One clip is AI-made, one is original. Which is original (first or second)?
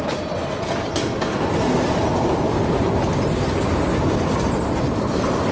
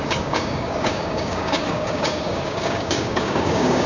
first